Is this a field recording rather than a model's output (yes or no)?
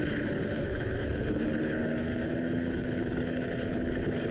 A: no